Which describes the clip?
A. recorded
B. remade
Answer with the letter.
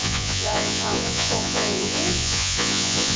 B